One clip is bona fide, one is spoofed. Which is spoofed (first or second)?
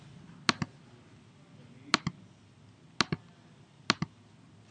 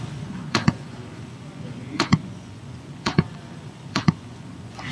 second